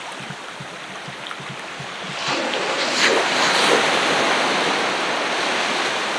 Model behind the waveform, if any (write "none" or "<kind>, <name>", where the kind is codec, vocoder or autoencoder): none